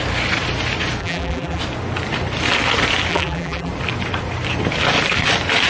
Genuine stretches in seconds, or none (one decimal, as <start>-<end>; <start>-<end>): 0.0-1.0; 1.6-3.1; 3.7-5.7